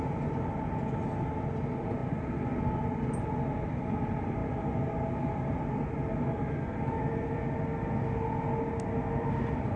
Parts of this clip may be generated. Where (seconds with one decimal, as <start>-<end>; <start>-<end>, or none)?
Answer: none